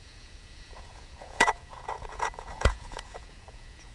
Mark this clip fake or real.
fake